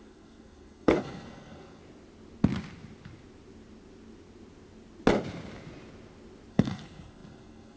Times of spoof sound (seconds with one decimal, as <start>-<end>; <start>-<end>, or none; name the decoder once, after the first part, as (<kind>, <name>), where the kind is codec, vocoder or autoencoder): 0.0-1.8 (codec, SNAC); 6.5-7.8